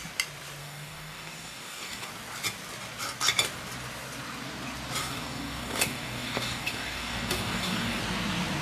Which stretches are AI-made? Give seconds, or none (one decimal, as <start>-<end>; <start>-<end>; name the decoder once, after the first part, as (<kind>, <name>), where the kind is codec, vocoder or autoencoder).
0.6-2.1 (codec, DAC); 5.0-8.0